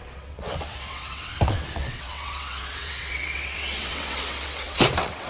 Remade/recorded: remade